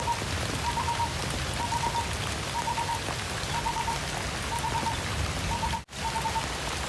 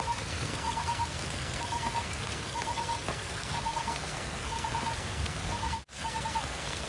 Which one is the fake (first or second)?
second